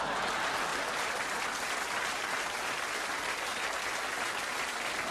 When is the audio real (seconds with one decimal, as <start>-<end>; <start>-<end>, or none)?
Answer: 0.0-0.7; 1.4-5.1